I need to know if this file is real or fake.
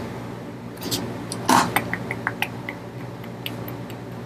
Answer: real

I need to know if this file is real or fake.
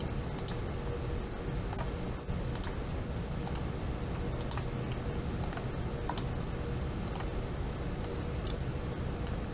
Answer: real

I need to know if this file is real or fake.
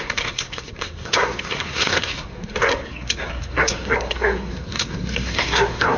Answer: fake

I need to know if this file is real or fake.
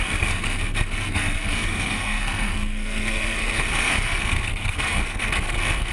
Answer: fake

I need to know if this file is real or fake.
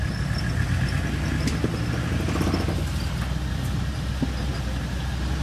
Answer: real